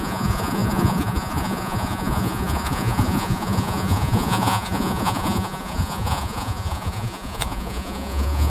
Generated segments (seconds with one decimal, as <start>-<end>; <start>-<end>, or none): 0.0-8.5

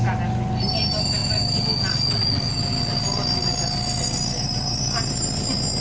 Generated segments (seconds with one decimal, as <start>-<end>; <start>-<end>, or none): none

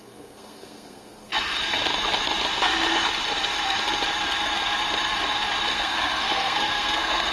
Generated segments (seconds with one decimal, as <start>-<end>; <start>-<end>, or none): 0.0-1.3; 5.7-7.3

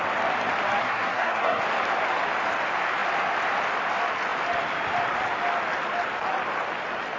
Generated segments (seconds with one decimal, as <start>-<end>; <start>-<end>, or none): 0.8-1.6

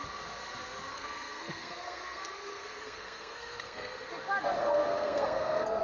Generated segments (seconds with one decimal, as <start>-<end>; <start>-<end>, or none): 0.9-4.1; 4.6-5.8

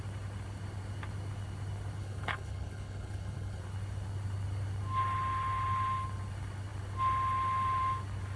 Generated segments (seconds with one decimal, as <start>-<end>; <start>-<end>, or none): 2.0-3.6

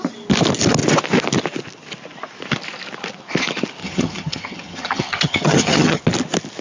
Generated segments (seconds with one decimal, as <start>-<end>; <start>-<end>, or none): 3.8-6.0